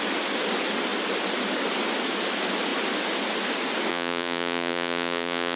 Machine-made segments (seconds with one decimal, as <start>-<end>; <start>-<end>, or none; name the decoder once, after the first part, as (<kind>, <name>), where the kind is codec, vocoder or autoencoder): 3.9-5.6 (vocoder, Vocos)